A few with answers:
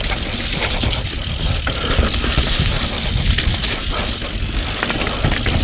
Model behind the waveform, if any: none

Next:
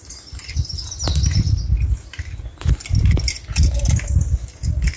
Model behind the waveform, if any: none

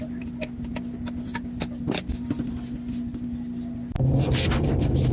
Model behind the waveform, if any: none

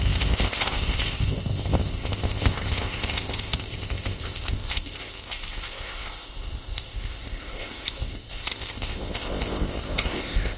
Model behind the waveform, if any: codec, ZipCodec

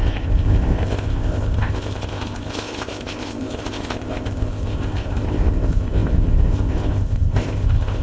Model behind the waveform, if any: codec, ZipCodec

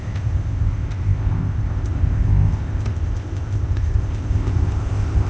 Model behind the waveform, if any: codec, ZipCodec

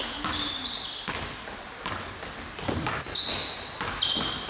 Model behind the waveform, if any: none